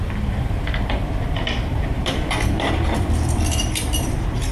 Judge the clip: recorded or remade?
remade